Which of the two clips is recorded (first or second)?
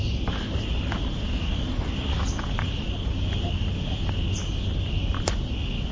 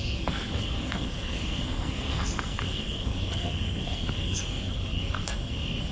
first